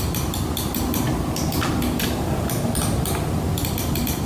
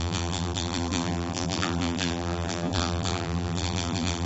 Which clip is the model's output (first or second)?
second